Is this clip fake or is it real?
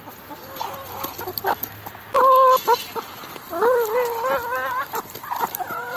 real